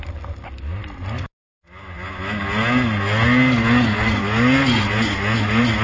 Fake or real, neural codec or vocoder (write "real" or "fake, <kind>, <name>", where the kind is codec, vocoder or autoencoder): real